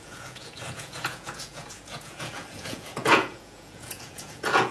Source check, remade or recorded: remade